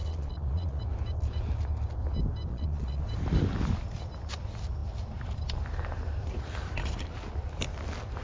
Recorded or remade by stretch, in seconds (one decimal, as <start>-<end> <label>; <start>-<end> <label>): 0.0-0.8 remade; 0.8-2.5 recorded; 2.5-3.0 remade; 3.0-8.2 recorded